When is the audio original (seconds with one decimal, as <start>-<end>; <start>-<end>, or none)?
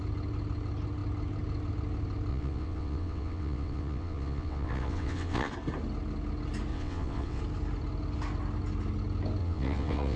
0.0-2.3; 5.5-6.7; 7.4-9.4